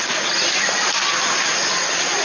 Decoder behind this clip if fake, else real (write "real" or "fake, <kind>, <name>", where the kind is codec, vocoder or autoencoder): real